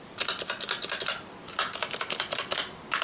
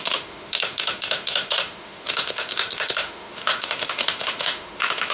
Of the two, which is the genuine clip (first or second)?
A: first